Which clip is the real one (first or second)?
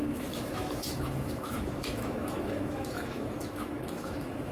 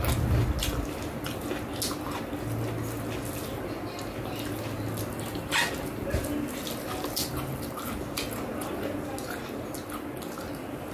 second